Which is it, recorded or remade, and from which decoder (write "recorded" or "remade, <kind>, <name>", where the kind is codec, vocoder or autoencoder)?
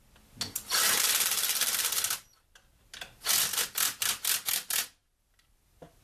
recorded